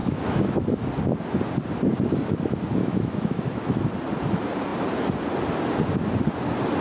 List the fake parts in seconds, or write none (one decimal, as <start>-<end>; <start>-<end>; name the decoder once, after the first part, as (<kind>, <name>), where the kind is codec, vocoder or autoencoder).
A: 0.0-0.9 (autoencoder, DAC-VAE); 2.8-3.9